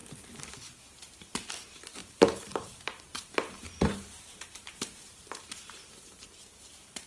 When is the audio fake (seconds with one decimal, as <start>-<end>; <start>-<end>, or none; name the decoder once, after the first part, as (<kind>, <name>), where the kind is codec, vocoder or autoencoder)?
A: 2.0-6.3 (vocoder, BigVGAN v2)